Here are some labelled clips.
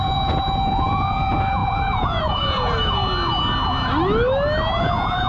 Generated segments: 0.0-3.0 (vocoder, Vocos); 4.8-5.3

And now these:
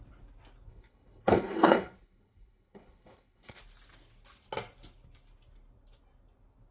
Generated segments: 0.7-3.6 (codec, HILCodec)

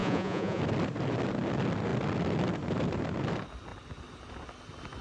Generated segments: 0.0-0.6 (vocoder, Vocos)

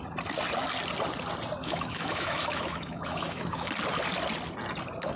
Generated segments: 1.6-3.7 (autoencoder, DAC-VAE)

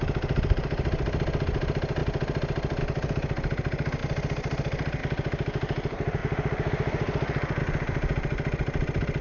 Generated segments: none

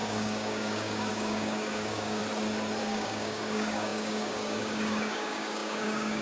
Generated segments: 0.0-2.2 (codec, DAC); 2.8-6.2

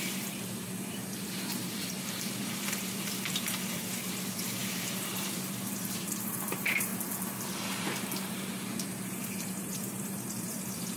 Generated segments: 0.0-6.9 (vocoder, BigVGAN v2); 7.7-11.0